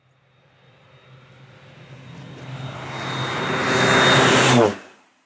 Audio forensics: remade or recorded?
recorded